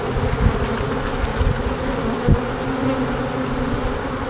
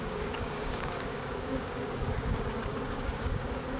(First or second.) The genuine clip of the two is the first